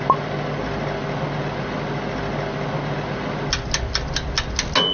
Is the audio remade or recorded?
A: recorded